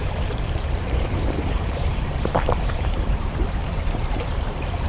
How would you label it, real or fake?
fake